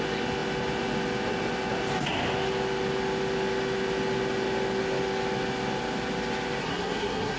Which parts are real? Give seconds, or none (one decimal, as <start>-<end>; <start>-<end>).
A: 0.0-6.6